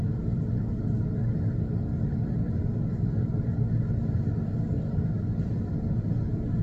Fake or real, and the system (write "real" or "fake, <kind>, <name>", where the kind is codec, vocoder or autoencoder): real